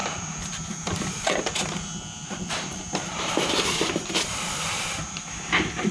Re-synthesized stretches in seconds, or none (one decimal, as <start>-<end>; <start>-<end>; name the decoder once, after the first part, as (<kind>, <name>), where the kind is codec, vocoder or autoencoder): 0.0-1.4 (vocoder, BigVGAN v2); 2.2-5.9